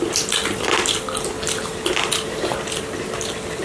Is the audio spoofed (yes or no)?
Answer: no